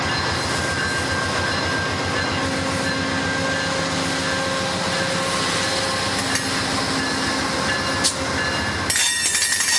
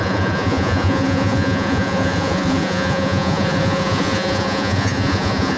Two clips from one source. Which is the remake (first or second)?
second